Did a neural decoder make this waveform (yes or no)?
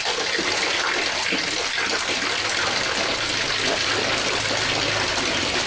no